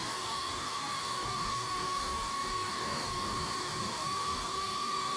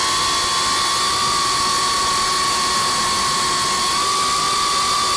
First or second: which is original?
second